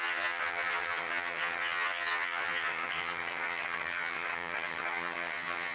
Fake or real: fake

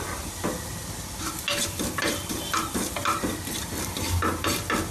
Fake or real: real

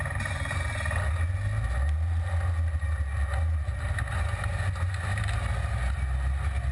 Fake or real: real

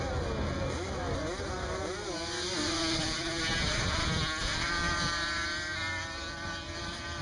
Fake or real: real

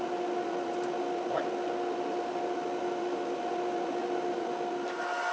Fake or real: real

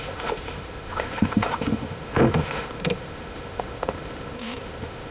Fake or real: fake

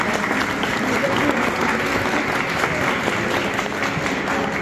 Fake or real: real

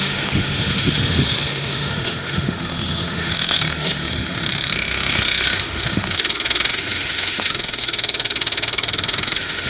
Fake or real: fake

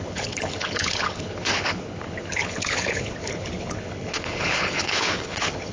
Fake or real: fake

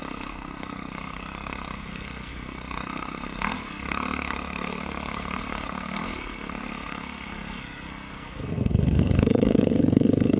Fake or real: fake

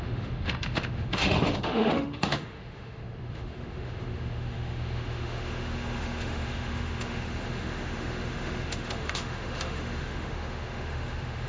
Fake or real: fake